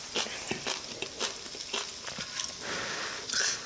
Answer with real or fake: real